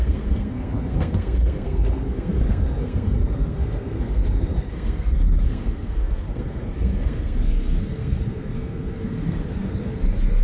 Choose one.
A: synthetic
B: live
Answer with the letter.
A